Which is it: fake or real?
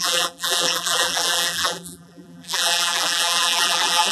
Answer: fake